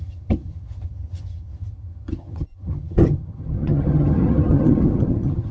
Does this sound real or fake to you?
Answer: fake